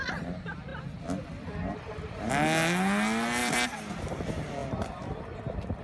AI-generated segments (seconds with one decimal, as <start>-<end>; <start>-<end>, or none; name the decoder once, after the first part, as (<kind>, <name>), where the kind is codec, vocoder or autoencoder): 3.4-4.0 (vocoder, BigVGAN v2); 4.6-5.8